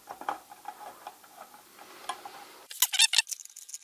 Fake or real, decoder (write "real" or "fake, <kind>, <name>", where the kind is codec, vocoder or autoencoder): real